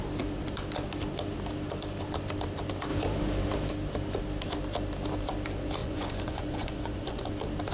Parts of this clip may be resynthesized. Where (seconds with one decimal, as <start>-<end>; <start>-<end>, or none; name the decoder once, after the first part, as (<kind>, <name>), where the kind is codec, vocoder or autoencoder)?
5.8-7.3 (vocoder, Vocos)